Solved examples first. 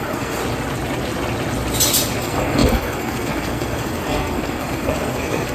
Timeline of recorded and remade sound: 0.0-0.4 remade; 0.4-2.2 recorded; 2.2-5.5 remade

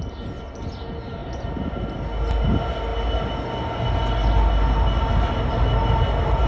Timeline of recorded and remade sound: 0.0-6.5 recorded

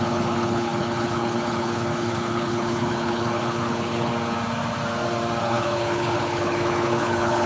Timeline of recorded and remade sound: 0.0-4.1 remade; 4.1-5.4 recorded; 5.4-7.5 remade

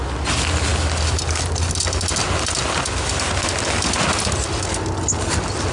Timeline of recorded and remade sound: 0.0-5.7 recorded

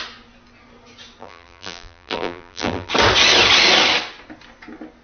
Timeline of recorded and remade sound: 0.0-1.2 recorded; 1.2-2.9 remade; 2.9-5.0 recorded